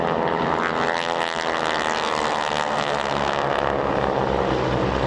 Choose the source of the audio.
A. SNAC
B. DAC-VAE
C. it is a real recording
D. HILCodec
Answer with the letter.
C